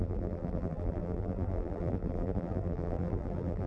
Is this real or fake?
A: fake